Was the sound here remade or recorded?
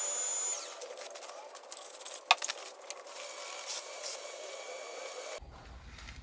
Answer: recorded